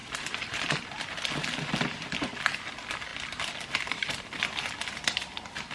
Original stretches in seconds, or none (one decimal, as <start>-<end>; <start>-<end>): 0.6-5.7